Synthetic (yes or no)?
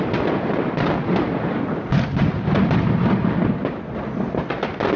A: no